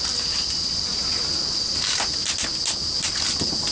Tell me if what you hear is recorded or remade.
recorded